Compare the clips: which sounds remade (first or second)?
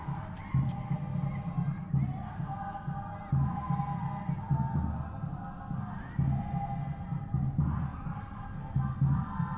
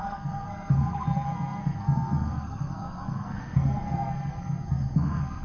second